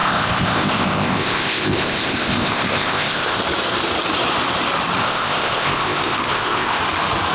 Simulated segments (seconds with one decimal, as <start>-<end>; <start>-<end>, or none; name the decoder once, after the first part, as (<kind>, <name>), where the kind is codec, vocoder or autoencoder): 0.0-3.4 (codec, ZipCodec); 5.0-6.8